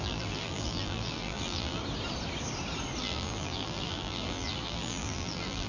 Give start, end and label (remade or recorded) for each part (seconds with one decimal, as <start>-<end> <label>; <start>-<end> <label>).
0.0-1.8 remade; 1.8-3.0 recorded; 3.0-5.7 remade